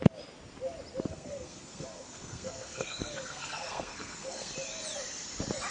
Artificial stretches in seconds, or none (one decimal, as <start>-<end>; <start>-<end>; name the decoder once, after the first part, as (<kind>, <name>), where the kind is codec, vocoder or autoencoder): 1.1-4.5 (codec, SNAC)